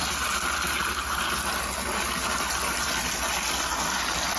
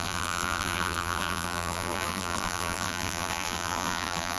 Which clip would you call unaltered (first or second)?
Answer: first